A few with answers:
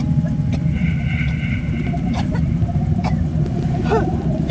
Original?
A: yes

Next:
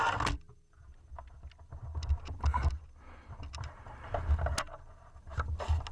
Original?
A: yes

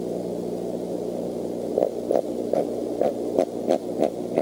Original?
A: yes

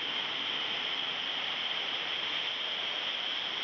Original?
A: yes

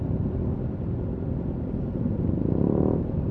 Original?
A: yes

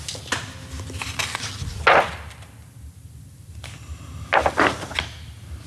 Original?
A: yes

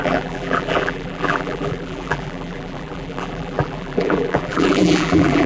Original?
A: no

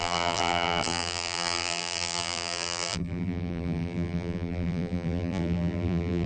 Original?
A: no